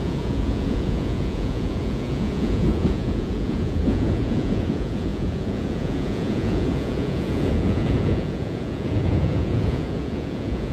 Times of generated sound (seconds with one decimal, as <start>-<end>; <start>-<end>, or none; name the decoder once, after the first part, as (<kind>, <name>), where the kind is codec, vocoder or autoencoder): 0.0-10.7 (vocoder, Vocos)